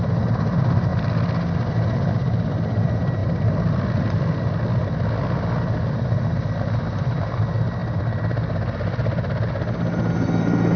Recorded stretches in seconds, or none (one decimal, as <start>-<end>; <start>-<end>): 0.0-10.8